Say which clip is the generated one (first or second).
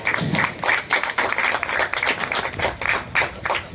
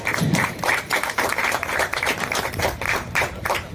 second